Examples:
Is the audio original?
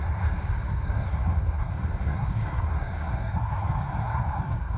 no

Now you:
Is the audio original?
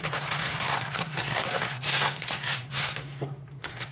no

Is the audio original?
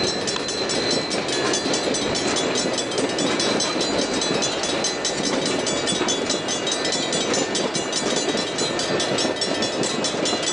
yes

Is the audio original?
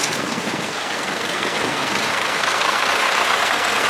no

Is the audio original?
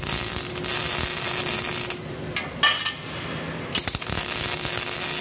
yes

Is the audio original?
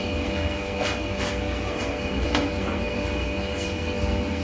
no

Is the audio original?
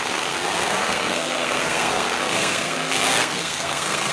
no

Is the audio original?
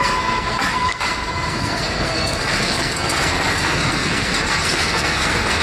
no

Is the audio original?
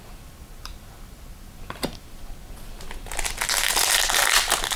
yes